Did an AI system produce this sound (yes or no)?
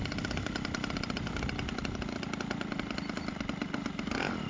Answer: no